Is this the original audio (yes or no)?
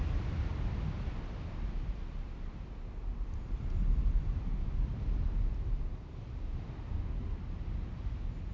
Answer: yes